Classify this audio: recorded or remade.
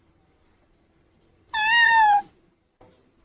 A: remade